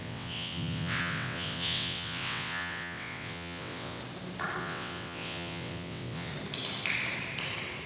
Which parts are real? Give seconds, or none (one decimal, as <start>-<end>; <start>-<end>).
4.0-4.6; 6.3-7.9